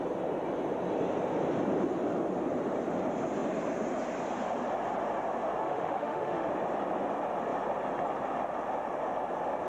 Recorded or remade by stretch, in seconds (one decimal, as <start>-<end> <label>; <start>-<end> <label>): 0.0-5.6 recorded; 5.6-6.5 remade; 6.5-9.7 recorded